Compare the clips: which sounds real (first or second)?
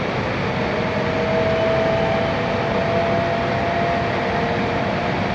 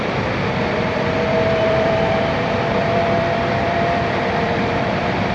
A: first